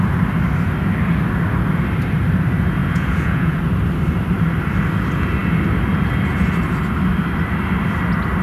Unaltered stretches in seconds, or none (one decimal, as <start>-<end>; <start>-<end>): 0.0-2.8; 3.6-8.4

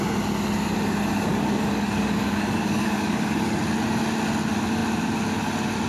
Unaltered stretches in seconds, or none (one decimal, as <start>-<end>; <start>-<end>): 0.0-1.3; 3.6-5.9

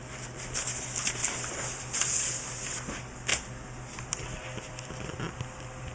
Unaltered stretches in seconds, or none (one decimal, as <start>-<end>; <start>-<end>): 0.0-5.9

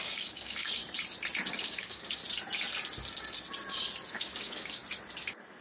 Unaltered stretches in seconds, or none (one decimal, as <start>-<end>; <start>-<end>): 0.8-1.5; 2.2-4.1; 4.8-5.6

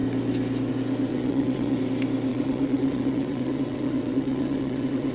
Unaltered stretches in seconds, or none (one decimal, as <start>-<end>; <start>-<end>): 0.0-1.1; 1.8-2.3

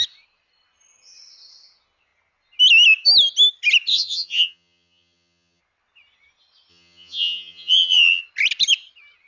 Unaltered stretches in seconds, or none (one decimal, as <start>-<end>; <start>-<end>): 0.0-3.9; 5.6-6.7; 8.2-9.3

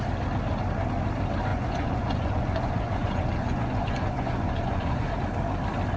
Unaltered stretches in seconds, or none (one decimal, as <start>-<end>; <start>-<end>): 0.0-1.5; 5.1-6.0